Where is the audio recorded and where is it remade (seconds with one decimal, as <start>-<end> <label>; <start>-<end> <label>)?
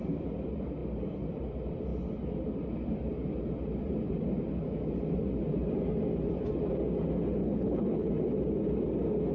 0.0-7.4 recorded; 7.4-8.1 remade; 8.1-9.3 recorded